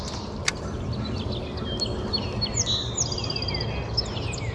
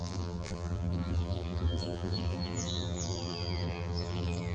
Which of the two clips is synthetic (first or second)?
second